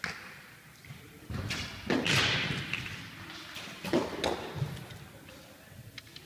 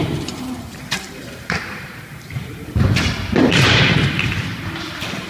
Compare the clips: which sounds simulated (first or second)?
second